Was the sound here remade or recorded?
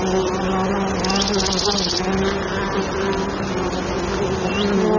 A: recorded